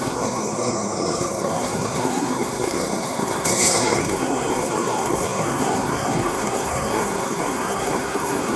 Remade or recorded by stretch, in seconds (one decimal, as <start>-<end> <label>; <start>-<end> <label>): 0.0-8.6 remade